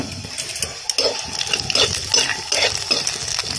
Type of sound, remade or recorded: recorded